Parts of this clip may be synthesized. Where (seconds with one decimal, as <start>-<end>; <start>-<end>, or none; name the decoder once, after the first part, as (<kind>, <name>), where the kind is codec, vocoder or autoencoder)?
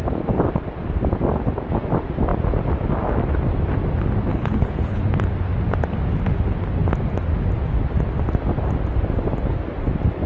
4.3-5.0 (codec, HILCodec)